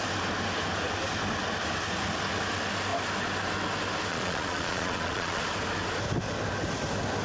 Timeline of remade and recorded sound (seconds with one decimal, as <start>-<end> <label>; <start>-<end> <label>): 0.0-4.1 recorded; 4.1-5.4 remade; 5.4-7.2 recorded